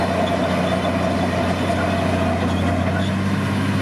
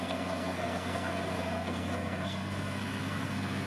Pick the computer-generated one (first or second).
second